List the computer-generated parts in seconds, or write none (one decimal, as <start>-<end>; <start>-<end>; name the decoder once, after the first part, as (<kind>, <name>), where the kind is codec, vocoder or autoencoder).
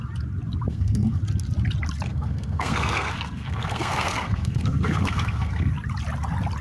0.7-1.2 (codec, SNAC); 2.1-5.7